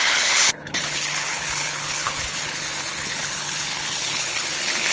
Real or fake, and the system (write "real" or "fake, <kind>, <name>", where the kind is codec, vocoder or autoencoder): fake, codec, HILCodec